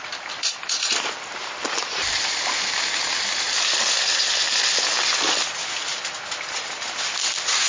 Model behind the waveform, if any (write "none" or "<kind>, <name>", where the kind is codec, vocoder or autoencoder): vocoder, BigVGAN v2